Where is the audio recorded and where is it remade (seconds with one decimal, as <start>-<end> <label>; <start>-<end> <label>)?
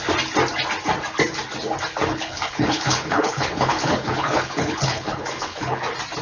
0.0-2.1 recorded; 2.1-5.8 remade; 5.8-6.2 recorded